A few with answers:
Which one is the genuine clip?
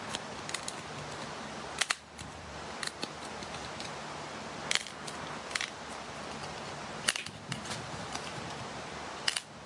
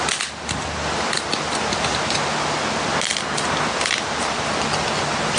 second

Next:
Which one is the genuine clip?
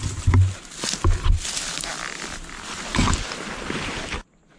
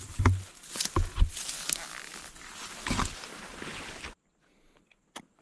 second